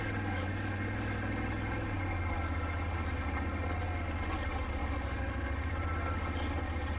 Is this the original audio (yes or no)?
yes